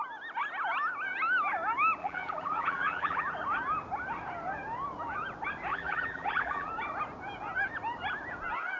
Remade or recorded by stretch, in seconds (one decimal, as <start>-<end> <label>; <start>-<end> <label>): 0.0-2.0 recorded; 2.0-3.2 remade; 3.2-5.7 recorded; 5.7-6.7 remade; 6.7-8.8 recorded